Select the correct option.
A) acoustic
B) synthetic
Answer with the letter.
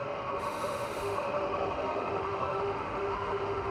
B